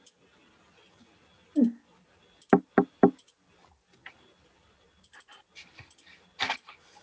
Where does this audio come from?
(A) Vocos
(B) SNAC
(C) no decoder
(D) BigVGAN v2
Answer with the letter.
C